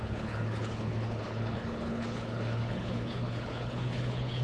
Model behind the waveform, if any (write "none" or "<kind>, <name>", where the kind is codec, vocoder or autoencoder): codec, HILCodec